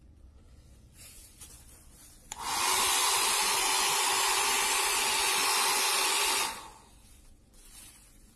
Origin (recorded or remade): remade